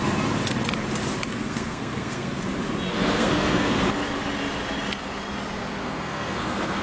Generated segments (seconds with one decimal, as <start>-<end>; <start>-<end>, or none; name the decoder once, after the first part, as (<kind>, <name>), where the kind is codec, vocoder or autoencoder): 1.3-2.4 (codec, SNAC); 2.9-3.8; 5.8-6.8